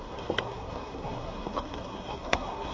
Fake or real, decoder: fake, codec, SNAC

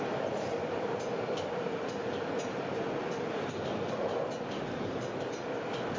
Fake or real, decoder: real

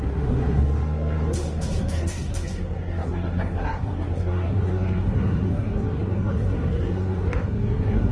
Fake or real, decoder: fake, codec, SNAC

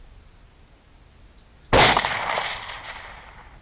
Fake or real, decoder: real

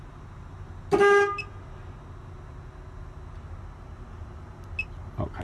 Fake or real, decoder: real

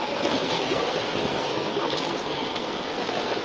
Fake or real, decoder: fake, codec, SNAC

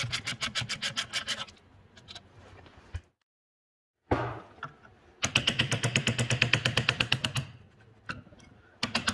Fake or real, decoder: real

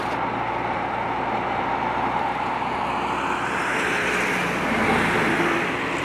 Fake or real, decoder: real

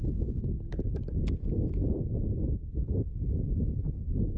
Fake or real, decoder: real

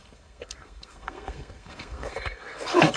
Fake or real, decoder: fake, codec, SNAC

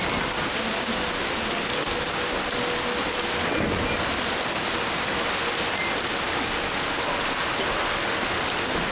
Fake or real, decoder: real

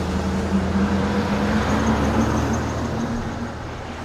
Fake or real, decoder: real